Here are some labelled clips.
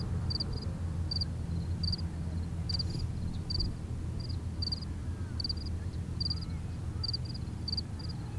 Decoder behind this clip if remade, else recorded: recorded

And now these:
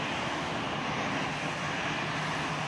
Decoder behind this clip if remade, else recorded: recorded